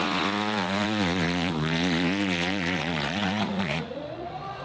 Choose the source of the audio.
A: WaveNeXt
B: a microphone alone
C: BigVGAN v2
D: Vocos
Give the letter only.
D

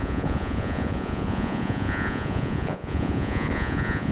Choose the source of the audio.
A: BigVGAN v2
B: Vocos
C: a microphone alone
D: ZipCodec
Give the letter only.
B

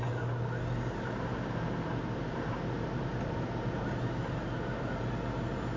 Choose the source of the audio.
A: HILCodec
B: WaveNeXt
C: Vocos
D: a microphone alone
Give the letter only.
D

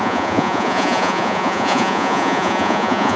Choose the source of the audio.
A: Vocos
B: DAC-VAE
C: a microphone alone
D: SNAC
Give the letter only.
A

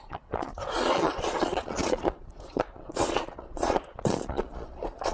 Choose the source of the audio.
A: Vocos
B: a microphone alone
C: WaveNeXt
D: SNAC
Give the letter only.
A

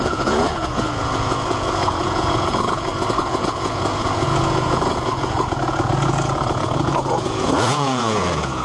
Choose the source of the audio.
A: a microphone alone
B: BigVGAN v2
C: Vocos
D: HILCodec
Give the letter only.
C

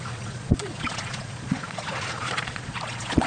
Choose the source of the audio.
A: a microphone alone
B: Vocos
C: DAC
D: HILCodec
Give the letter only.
B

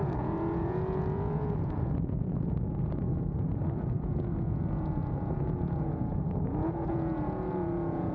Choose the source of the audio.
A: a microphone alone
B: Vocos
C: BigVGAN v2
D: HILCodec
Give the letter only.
B